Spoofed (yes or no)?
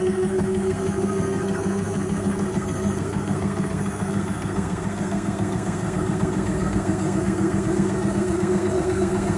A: yes